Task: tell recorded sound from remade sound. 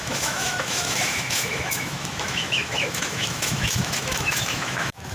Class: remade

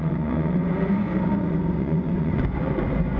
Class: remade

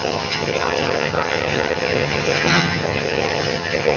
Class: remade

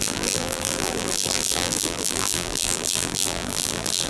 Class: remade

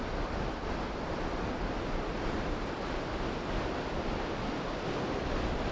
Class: recorded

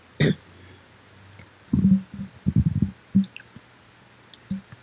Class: recorded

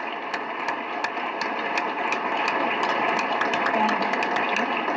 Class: recorded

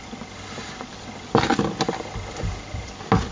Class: recorded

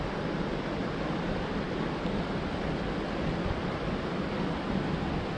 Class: recorded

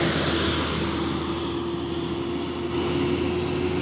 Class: recorded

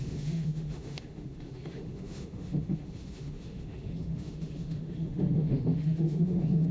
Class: remade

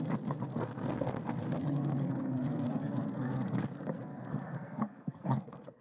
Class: remade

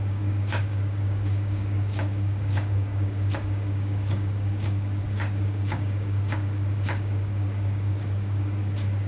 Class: remade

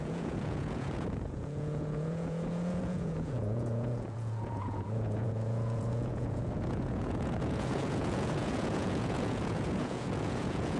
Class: remade